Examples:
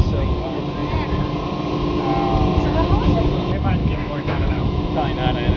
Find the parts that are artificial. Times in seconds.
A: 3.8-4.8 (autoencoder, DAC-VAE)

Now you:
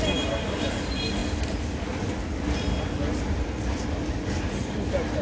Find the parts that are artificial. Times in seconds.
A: none

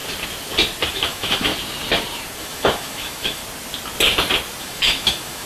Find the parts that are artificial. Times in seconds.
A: 0.9-1.5 (autoencoder, DAC-VAE); 2.4-3.4; 4.6-5.5

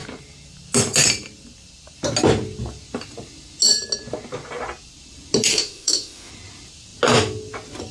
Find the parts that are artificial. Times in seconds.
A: 5.5-6.3 (autoencoder, DAC-VAE)